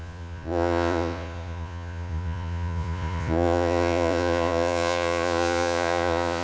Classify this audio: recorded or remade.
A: remade